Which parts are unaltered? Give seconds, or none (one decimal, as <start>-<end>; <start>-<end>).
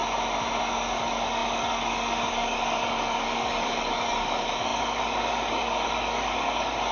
0.0-0.6